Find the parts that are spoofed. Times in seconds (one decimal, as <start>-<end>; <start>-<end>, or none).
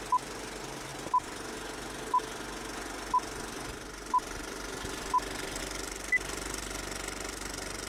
none